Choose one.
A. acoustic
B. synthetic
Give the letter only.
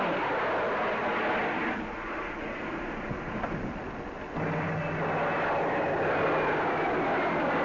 A